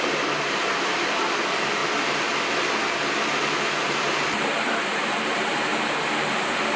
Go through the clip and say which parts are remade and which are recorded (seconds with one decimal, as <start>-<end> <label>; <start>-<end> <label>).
0.0-1.8 remade; 1.8-3.9 recorded; 3.9-5.7 remade; 5.7-6.2 recorded; 6.2-6.8 remade